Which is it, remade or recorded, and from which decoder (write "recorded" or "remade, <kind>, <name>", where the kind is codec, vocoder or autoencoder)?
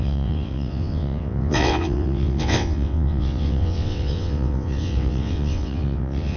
remade, vocoder, WaveNeXt